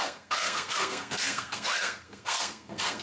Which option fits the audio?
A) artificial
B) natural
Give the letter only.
A